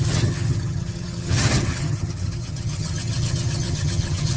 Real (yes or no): no